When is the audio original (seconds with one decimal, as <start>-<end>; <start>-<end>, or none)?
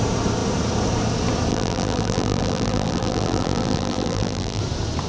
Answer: 0.0-1.5; 4.6-5.1